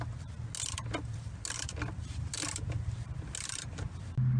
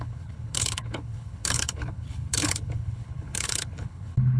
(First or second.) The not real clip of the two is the second